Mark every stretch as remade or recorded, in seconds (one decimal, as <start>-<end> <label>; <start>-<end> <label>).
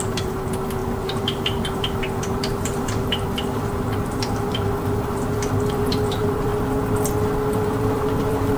0.0-6.5 remade; 6.5-7.5 recorded; 7.5-8.6 remade